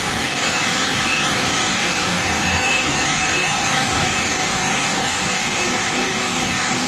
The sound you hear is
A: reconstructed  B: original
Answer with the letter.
A